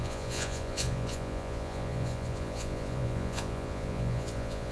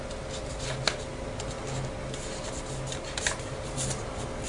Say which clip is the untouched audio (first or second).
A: second